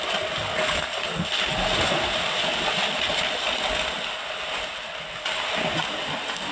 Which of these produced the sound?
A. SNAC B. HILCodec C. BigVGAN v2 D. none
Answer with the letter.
D